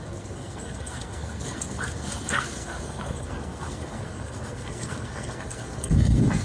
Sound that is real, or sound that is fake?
fake